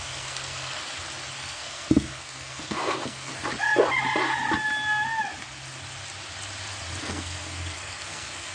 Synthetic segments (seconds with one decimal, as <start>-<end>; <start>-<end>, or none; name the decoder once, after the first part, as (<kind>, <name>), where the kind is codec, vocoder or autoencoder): 0.0-0.8 (codec, SNAC); 1.3-3.3; 7.0-8.5